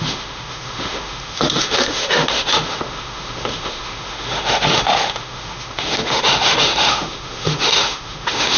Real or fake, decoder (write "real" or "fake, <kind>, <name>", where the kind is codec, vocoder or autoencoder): fake, autoencoder, DAC-VAE